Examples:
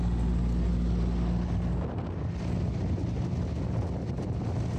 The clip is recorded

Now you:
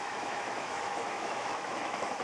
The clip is remade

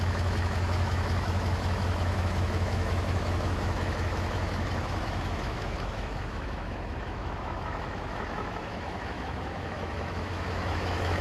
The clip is remade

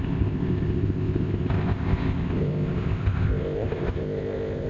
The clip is remade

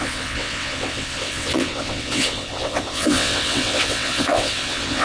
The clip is remade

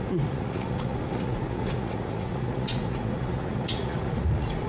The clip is remade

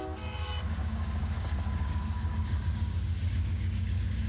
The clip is remade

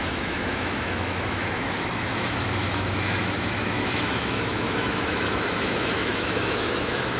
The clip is remade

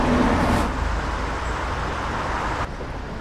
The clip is recorded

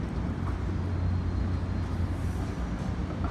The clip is recorded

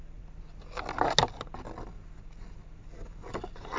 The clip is recorded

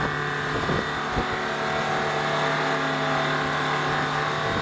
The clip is recorded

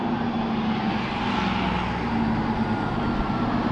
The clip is recorded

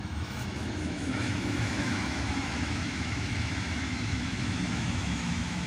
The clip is remade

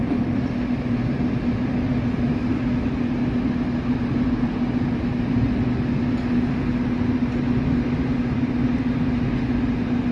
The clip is recorded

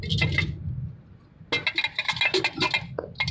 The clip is recorded